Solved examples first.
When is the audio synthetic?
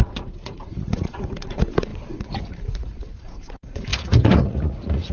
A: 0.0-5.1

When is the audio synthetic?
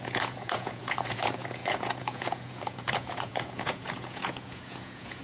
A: 0.0-5.2